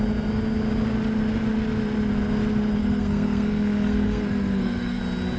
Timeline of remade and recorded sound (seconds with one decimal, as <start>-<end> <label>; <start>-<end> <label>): 0.0-2.8 recorded; 2.8-5.0 remade; 5.0-5.4 recorded